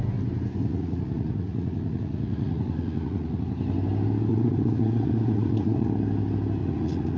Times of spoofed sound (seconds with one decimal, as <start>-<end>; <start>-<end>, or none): 0.6-3.4; 4.3-5.9; 6.6-7.2